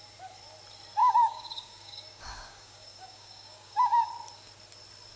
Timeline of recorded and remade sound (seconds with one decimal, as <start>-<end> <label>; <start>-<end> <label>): 0.0-1.0 recorded; 1.0-4.1 remade; 4.1-5.2 recorded